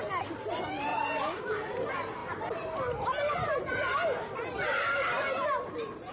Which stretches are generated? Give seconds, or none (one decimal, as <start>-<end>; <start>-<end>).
0.9-1.4